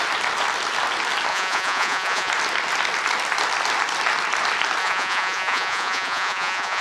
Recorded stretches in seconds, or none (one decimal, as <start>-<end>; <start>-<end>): 0.0-1.3; 2.3-4.8